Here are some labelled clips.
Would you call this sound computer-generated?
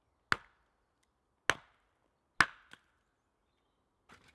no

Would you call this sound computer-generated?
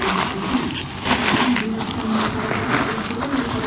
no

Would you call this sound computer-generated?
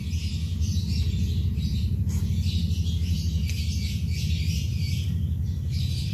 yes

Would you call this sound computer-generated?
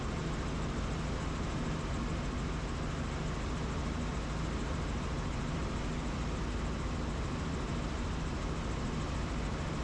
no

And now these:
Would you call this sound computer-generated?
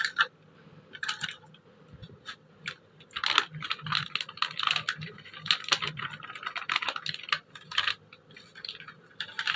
no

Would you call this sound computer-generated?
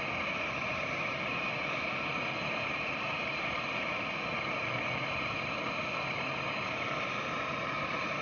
no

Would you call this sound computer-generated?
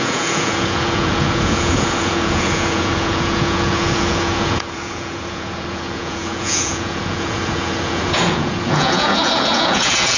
yes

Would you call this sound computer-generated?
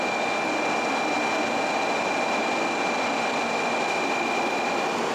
no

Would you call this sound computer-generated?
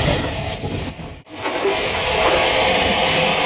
no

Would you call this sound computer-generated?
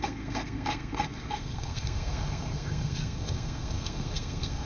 yes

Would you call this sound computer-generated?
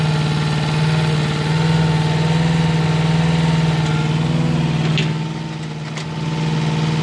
no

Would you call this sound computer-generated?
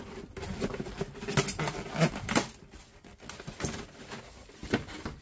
no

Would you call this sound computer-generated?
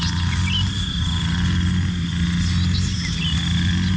no